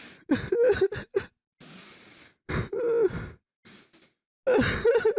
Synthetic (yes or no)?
no